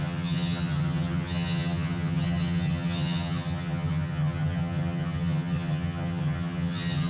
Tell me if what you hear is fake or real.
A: fake